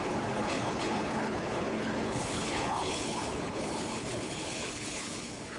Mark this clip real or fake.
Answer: fake